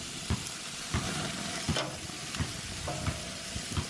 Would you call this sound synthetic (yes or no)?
no